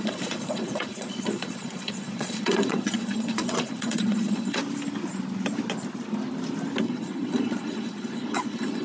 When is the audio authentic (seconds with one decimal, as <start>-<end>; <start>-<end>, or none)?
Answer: 4.6-6.8